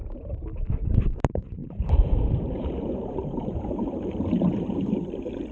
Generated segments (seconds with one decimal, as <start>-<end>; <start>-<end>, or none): 0.0-5.5